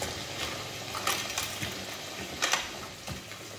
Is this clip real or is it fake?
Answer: real